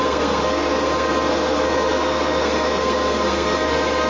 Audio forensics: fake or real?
fake